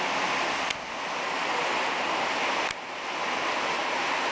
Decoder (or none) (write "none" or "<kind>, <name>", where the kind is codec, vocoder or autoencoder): none